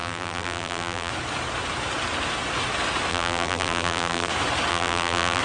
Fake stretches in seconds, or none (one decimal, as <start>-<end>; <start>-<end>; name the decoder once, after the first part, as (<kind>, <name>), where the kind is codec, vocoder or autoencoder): 0.0-1.1 (vocoder, BigVGAN v2); 3.1-4.3; 4.7-5.4